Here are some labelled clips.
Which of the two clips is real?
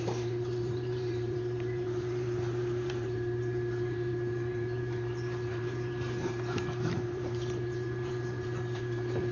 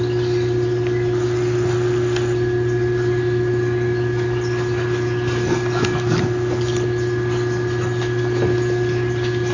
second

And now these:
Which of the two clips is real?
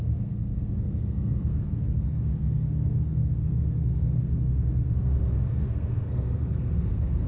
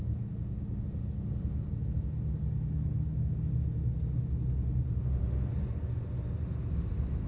second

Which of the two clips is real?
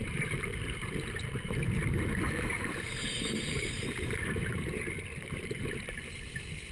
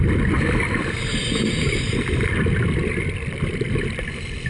second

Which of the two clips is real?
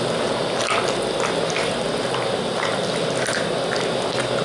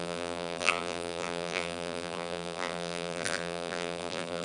first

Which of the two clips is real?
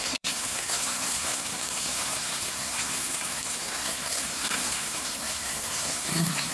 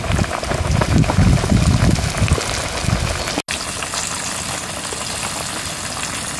second